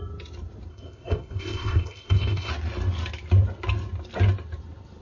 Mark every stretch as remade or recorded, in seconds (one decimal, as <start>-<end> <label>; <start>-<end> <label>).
0.0-0.7 recorded; 0.7-2.5 remade; 2.5-5.0 recorded